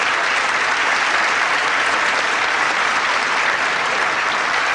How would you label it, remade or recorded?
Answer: recorded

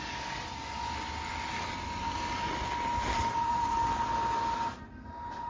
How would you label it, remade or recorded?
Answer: recorded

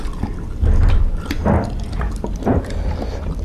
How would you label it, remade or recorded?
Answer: recorded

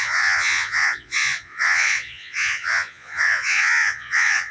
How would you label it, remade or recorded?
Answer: remade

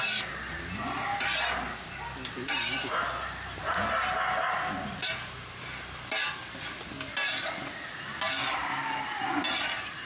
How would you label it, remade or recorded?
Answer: recorded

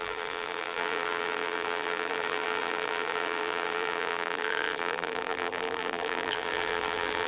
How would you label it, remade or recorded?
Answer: remade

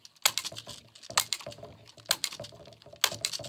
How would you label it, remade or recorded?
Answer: recorded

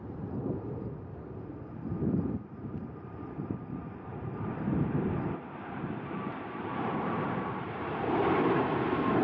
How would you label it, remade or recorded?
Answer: remade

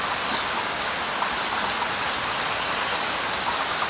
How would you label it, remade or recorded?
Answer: recorded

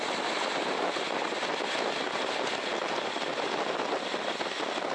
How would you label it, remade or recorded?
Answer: recorded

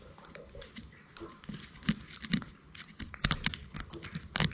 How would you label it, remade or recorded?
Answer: recorded